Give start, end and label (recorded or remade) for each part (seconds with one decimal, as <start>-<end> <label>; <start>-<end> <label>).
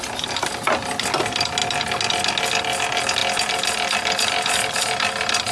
0.0-5.5 recorded